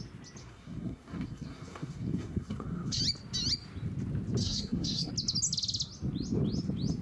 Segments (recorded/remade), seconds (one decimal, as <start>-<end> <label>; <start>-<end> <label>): 0.0-0.4 recorded; 0.4-3.0 remade; 3.0-4.4 recorded; 4.4-5.1 remade; 5.1-7.0 recorded